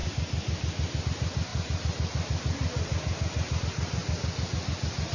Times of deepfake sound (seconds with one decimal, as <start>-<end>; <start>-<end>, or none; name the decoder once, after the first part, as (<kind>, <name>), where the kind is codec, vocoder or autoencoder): none